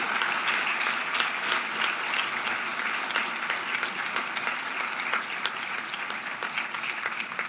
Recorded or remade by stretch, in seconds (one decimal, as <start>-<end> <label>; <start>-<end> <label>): 0.0-7.5 recorded